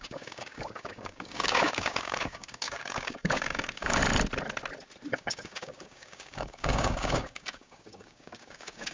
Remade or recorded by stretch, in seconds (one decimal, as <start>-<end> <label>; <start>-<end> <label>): 0.0-4.0 remade; 4.0-5.1 recorded; 5.1-8.9 remade